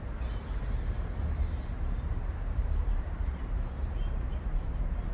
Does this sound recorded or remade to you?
remade